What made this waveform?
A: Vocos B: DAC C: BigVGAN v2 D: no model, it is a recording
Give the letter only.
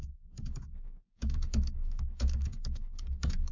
B